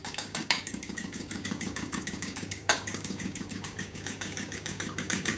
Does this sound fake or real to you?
fake